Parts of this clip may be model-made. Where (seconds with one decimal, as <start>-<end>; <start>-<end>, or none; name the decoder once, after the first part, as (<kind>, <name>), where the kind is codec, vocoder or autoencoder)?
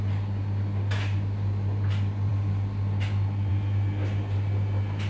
none